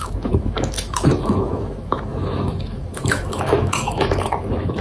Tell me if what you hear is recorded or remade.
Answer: remade